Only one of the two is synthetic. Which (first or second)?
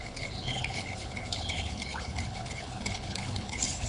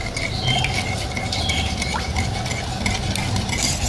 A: first